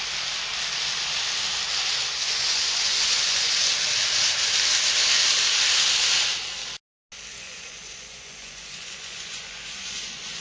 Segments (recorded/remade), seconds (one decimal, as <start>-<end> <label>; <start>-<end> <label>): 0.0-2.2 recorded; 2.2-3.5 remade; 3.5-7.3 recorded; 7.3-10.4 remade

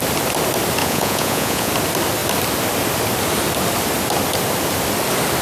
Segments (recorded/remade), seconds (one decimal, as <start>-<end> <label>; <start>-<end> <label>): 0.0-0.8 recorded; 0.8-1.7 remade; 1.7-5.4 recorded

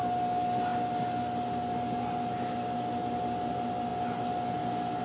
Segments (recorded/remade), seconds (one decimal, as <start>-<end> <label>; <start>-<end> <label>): 0.0-5.0 recorded

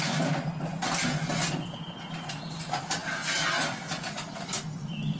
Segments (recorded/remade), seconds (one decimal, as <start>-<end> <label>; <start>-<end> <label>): 0.0-5.2 recorded

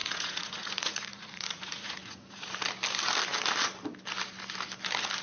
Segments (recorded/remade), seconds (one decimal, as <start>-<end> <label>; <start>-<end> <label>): 0.0-2.5 remade; 2.5-5.2 recorded

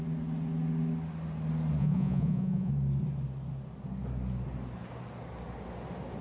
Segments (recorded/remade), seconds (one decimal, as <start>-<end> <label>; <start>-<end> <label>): 0.0-1.8 recorded; 1.8-2.7 remade; 2.7-6.2 recorded